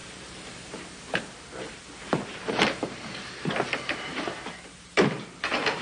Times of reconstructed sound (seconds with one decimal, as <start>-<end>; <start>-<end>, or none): 0.0-3.5; 4.1-4.9